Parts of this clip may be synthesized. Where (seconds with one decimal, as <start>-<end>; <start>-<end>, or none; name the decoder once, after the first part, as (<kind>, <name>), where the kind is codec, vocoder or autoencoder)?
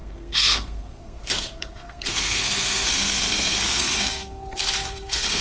0.0-5.4 (codec, SNAC)